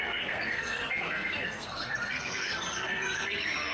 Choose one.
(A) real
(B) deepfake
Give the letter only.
B